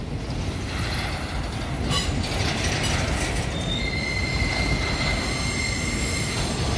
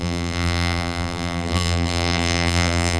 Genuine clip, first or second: first